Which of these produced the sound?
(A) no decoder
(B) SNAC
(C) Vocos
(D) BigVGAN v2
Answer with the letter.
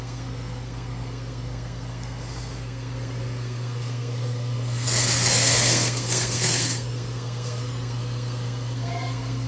B